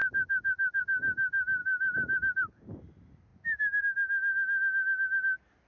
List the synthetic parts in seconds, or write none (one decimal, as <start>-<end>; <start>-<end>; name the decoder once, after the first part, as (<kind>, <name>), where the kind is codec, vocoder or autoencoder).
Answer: 0.0-0.8 (vocoder, BigVGAN v2); 1.6-2.6